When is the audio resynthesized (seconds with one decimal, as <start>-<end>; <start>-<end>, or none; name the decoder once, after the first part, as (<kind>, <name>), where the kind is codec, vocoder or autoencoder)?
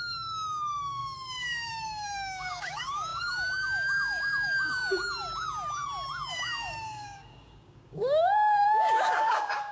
0.0-4.8 (codec, DAC); 6.3-9.7